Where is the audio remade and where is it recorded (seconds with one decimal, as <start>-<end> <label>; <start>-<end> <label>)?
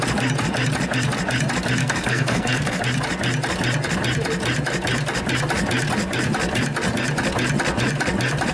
0.0-1.8 recorded; 1.8-2.8 remade; 2.8-8.5 recorded